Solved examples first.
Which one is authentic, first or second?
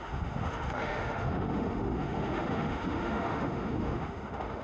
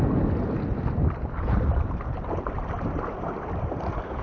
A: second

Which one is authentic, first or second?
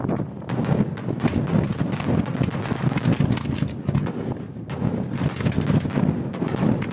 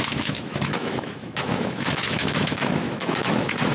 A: first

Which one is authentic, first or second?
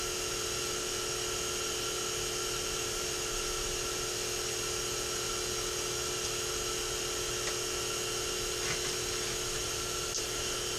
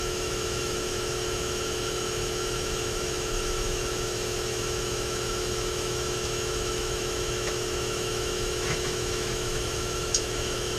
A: first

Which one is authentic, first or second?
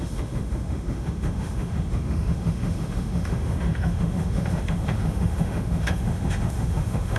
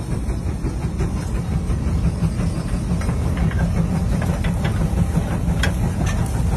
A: second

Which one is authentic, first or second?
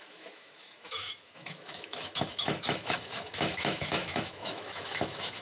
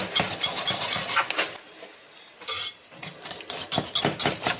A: second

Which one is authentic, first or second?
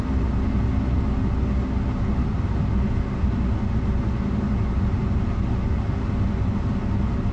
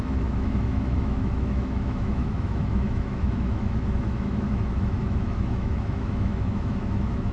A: first